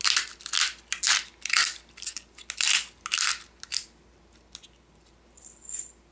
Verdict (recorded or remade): recorded